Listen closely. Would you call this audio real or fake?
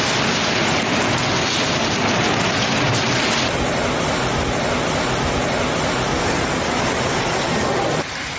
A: real